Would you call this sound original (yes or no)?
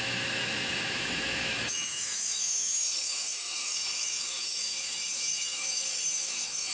no